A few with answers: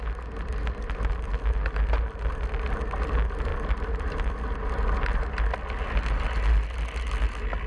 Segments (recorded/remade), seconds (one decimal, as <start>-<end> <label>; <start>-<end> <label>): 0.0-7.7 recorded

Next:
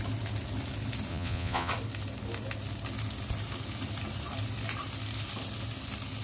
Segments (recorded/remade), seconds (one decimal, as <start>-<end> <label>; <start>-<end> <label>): 0.0-1.1 recorded; 1.1-1.7 remade; 1.7-6.2 recorded

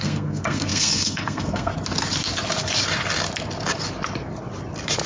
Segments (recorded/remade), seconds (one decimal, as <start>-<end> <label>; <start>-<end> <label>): 0.0-1.7 remade; 1.7-5.1 recorded

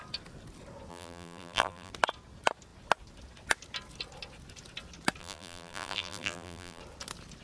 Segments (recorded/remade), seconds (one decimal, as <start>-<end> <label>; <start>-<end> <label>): 0.0-0.9 recorded; 0.9-1.9 remade; 1.9-5.2 recorded; 5.2-6.8 remade; 6.8-7.4 recorded

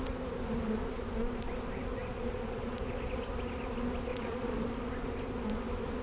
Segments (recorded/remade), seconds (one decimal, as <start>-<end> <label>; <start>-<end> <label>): 0.0-2.0 recorded; 2.0-2.7 remade; 2.7-4.1 recorded; 4.1-4.6 remade; 4.6-6.0 recorded

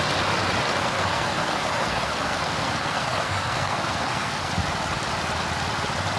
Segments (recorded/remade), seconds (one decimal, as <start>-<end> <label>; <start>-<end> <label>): 0.0-0.8 recorded; 0.8-4.5 remade; 4.5-6.2 recorded

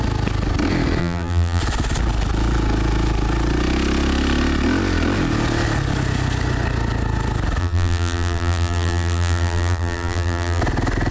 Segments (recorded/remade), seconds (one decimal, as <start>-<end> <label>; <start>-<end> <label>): 0.0-1.0 recorded; 1.0-1.6 remade; 1.6-7.6 recorded; 7.6-10.6 remade; 10.6-11.1 recorded

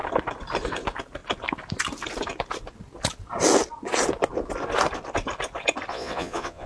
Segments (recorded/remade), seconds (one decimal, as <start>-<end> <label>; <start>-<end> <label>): 0.0-5.9 recorded; 5.9-6.7 remade